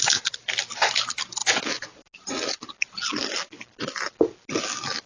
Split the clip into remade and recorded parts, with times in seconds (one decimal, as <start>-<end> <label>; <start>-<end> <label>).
0.0-5.1 recorded